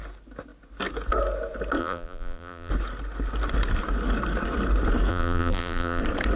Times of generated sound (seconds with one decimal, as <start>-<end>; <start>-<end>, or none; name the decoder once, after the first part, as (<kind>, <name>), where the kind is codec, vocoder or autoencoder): 1.8-2.7 (vocoder, BigVGAN v2); 5.1-6.0